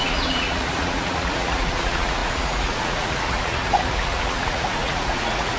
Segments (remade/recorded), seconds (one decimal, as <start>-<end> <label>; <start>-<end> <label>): 0.0-5.6 remade